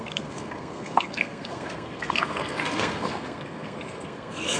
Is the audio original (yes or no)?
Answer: no